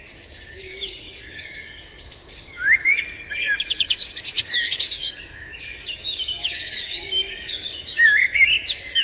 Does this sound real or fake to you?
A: fake